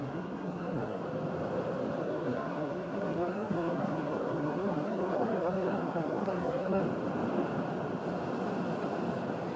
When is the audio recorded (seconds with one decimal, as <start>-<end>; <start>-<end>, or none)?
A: 1.0-2.0; 6.8-9.6